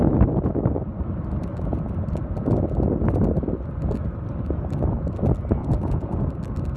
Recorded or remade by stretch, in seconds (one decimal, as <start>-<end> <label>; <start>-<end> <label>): 0.0-5.6 recorded; 5.6-6.2 remade; 6.2-6.8 recorded